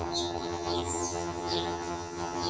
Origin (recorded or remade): remade